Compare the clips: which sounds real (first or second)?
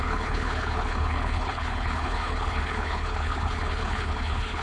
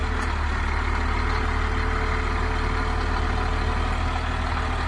second